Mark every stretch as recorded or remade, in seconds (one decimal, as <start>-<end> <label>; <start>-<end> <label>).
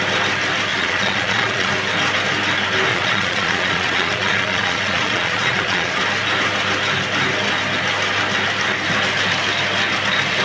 0.0-0.7 recorded; 0.7-1.7 remade; 1.7-2.9 recorded; 2.9-6.0 remade; 6.0-10.4 recorded